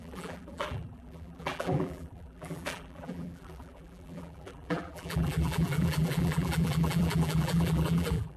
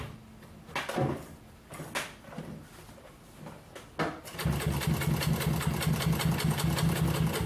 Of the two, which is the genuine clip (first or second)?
second